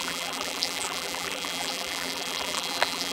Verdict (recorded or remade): remade